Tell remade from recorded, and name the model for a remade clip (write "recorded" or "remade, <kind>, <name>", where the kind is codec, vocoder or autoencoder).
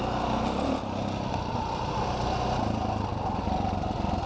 recorded